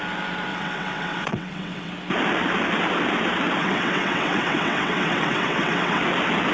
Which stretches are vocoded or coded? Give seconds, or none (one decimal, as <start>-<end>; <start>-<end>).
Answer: 0.5-1.9; 3.6-6.0